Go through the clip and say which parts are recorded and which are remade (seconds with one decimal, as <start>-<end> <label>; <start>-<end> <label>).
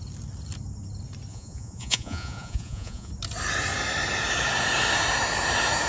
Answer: 0.0-1.3 recorded; 1.3-3.1 remade; 3.1-5.9 recorded